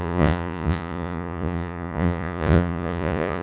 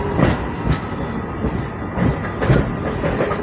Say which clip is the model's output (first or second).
first